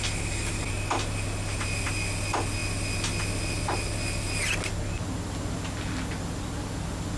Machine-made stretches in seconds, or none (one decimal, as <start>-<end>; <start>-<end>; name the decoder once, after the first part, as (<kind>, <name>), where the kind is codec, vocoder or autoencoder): none